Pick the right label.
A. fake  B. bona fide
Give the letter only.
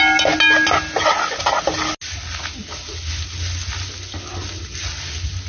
B